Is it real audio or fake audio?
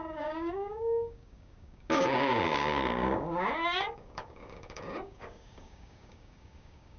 fake